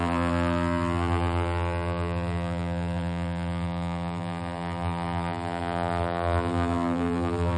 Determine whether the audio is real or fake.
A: fake